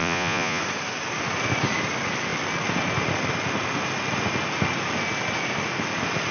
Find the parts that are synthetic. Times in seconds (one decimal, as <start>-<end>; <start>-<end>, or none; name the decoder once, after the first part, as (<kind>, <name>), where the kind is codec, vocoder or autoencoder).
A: 0.0-0.6 (vocoder, Vocos)